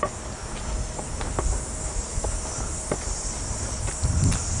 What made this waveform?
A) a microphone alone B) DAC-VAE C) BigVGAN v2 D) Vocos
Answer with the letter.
A